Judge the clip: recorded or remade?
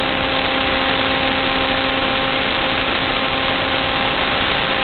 recorded